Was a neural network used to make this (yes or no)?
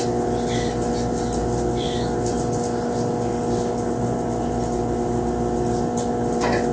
no